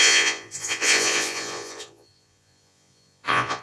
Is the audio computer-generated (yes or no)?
yes